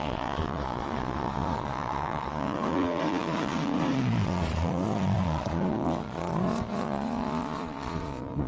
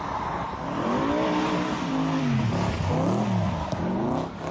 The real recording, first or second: second